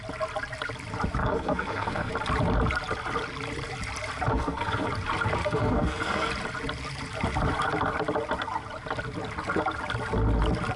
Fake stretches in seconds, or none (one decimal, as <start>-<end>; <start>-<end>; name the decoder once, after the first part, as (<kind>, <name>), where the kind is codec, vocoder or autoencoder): 1.2-2.1 (codec, SNAC); 4.3-4.9; 5.4-6.3